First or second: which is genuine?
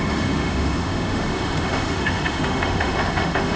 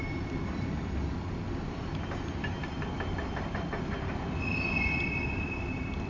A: second